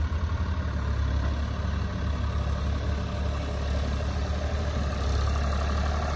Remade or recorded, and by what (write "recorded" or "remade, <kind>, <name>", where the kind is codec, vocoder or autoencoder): recorded